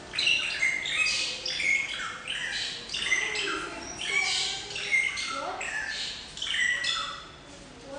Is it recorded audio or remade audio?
recorded